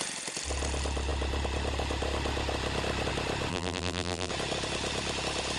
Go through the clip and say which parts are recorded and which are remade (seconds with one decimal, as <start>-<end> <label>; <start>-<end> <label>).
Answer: 0.0-3.5 recorded; 3.5-4.3 remade; 4.3-5.6 recorded

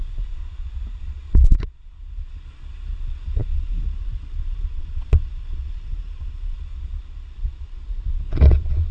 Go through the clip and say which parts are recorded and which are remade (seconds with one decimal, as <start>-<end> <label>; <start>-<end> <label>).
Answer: 0.0-0.4 remade; 0.4-1.0 recorded; 1.0-8.9 remade

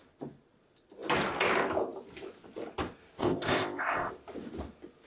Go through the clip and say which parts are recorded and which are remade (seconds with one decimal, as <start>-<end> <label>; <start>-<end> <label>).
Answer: 0.0-3.2 recorded; 3.2-4.1 remade; 4.1-5.1 recorded